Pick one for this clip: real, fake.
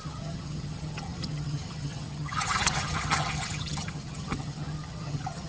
fake